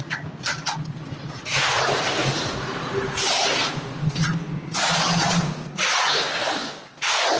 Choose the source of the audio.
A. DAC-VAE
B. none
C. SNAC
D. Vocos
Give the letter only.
B